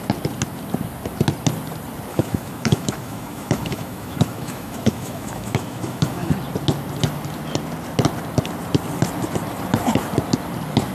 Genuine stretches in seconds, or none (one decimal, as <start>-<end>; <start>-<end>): 0.0-2.1; 6.3-10.9